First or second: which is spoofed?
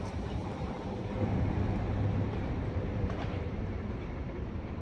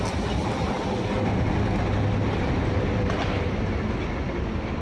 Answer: first